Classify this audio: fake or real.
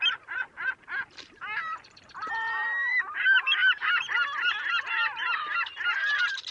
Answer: fake